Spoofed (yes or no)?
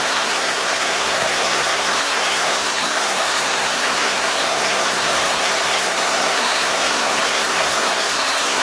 yes